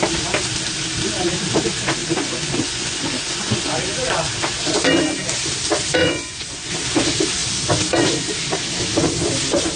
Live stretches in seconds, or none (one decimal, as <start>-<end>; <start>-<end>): 0.0-2.0; 3.9-6.0; 6.7-9.8